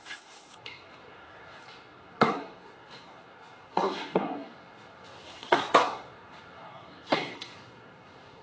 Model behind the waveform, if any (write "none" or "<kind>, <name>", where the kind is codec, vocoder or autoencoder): codec, SNAC